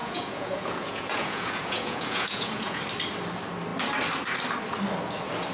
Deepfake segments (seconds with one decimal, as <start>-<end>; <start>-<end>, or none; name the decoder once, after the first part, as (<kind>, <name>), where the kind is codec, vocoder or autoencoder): 0.0-2.8 (vocoder, Vocos)